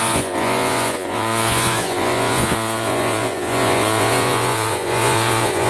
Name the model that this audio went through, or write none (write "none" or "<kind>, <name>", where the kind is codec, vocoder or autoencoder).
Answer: vocoder, Vocos